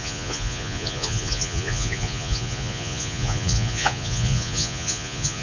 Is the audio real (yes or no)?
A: no